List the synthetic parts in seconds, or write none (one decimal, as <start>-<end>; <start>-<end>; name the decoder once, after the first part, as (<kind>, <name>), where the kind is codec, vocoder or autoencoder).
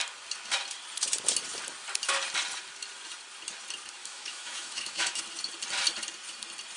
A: 4.0-5.2 (autoencoder, DAC-VAE)